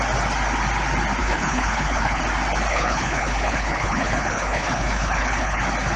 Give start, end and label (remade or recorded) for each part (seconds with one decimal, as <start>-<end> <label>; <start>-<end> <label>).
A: 0.0-1.2 recorded; 1.2-2.2 remade; 2.2-2.7 recorded; 2.7-5.6 remade; 5.6-6.0 recorded